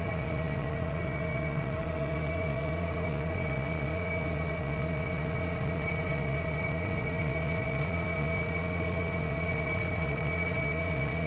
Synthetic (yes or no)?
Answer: yes